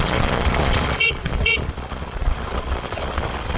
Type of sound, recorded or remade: remade